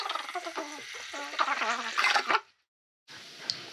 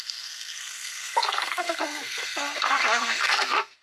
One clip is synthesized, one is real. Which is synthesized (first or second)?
second